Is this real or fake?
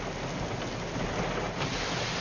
real